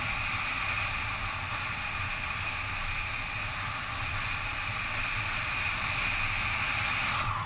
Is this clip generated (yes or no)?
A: no